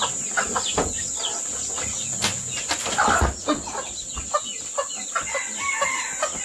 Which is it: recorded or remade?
recorded